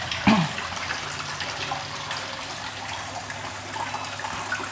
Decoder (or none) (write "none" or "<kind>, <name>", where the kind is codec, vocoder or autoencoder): none